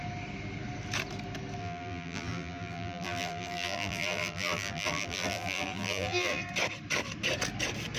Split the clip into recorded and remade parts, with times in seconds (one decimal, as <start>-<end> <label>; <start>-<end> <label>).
0.0-1.6 recorded; 1.6-6.4 remade; 6.4-8.0 recorded